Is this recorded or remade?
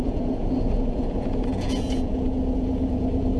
remade